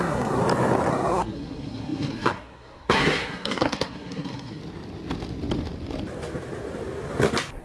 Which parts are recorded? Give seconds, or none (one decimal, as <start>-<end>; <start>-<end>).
0.4-0.9; 4.6-7.6